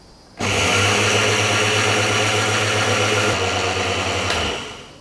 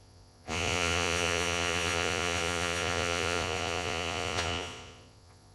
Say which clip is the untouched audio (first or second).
first